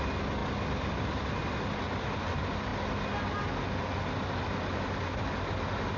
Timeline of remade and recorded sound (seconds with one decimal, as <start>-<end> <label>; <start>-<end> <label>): 0.0-6.0 recorded